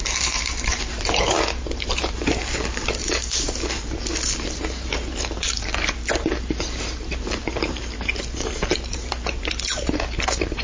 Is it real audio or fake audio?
fake